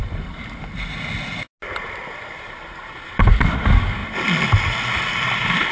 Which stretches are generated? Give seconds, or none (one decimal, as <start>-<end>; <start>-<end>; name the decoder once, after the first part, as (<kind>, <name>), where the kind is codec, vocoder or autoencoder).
none